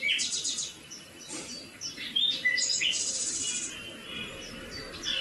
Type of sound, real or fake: fake